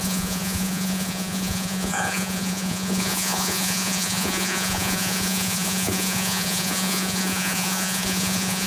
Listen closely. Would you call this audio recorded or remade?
remade